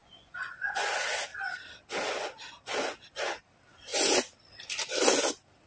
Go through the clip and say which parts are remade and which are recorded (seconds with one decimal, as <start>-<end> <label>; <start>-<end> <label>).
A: 0.0-0.9 remade; 0.9-5.7 recorded